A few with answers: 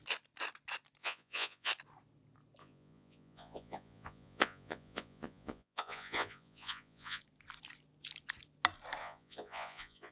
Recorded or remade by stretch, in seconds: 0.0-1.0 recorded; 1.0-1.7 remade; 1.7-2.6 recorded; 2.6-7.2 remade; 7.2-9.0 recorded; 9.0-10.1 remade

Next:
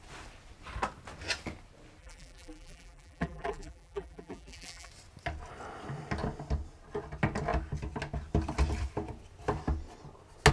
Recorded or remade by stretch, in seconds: 0.0-2.0 recorded; 2.0-4.9 remade; 4.9-10.5 recorded

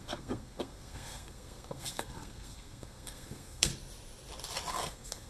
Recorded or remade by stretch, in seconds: 0.0-3.7 remade; 3.7-4.7 recorded; 4.7-5.3 remade